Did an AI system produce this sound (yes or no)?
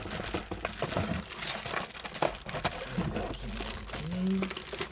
no